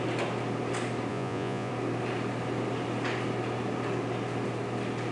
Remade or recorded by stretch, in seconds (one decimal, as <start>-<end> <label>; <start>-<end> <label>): 0.0-1.1 recorded; 1.1-1.7 remade; 1.7-5.1 recorded